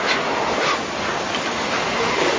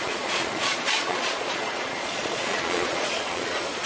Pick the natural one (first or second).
first